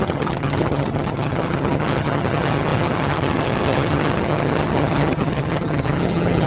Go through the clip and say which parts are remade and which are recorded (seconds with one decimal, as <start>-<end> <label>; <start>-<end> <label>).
0.0-6.5 remade